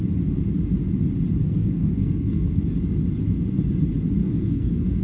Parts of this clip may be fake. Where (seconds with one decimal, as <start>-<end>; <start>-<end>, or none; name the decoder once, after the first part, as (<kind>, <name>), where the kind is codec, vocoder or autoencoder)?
1.4-2.6 (codec, SNAC); 4.2-5.0